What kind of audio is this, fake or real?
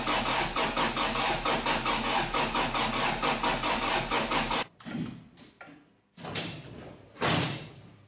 real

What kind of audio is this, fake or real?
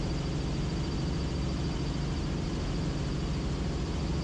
real